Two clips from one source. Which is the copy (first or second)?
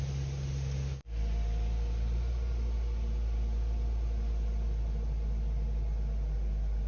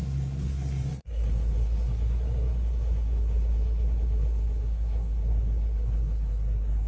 second